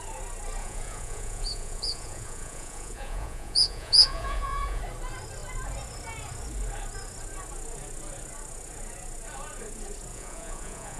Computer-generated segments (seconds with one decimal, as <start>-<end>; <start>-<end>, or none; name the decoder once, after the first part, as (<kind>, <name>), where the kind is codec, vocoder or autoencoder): 0.6-4.8 (vocoder, Vocos); 10.1-11.0